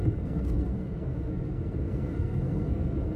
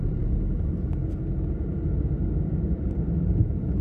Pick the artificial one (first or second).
first